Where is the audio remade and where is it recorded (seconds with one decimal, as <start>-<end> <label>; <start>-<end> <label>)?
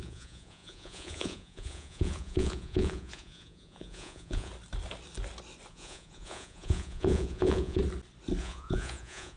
0.0-4.5 remade; 4.5-5.7 recorded; 5.7-7.8 remade; 7.8-8.4 recorded; 8.4-9.4 remade